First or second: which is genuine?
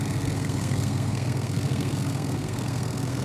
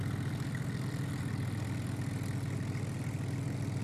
second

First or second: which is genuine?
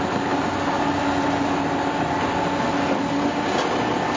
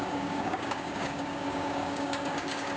first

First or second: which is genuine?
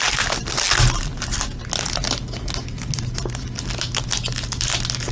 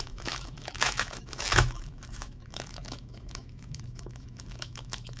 first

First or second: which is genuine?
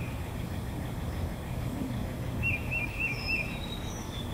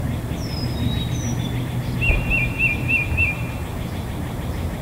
second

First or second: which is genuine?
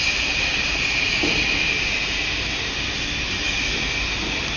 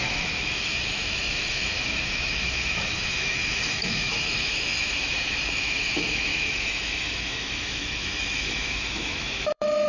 first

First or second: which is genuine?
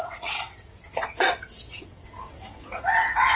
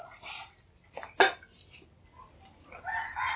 second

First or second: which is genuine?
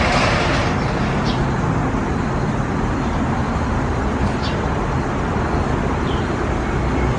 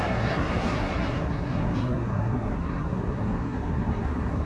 first